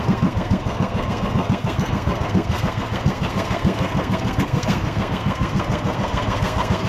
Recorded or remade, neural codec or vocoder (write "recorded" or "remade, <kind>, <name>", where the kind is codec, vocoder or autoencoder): remade, codec, SNAC